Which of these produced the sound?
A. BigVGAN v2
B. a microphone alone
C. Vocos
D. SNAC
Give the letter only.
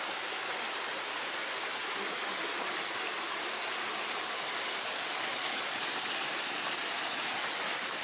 B